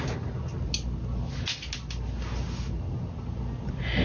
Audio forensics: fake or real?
real